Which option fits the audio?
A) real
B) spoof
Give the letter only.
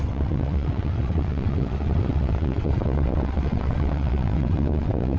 B